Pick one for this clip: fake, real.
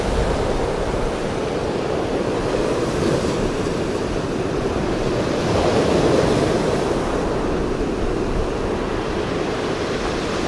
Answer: fake